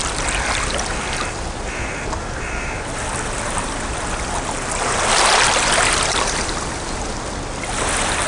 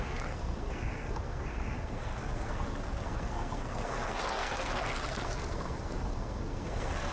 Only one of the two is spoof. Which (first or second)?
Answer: second